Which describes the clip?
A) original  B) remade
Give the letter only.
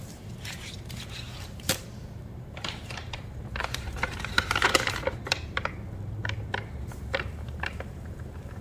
B